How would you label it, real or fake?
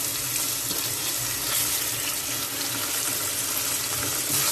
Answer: real